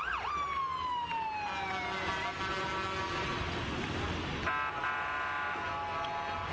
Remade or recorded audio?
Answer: recorded